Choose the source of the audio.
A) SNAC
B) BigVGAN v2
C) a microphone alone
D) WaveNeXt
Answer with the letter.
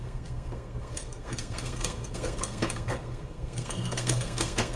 A